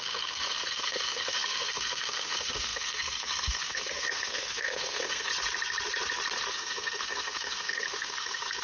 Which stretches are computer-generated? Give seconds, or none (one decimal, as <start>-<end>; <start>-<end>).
0.0-5.3; 6.5-8.6